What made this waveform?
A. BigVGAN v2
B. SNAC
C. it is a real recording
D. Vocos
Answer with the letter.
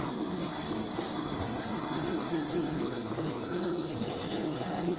B